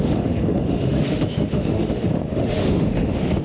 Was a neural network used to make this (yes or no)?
yes